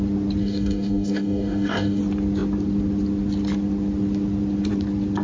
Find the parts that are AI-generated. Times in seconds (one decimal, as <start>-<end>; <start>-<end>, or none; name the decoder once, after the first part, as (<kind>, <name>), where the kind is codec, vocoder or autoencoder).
0.4-2.0 (codec, DAC)